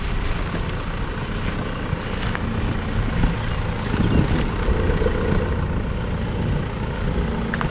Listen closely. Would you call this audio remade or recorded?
recorded